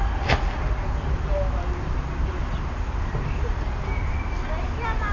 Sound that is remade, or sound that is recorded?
recorded